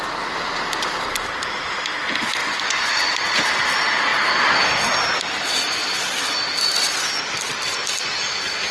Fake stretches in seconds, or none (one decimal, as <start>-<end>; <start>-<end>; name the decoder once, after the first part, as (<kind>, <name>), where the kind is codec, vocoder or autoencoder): 2.4-2.9 (vocoder, Vocos)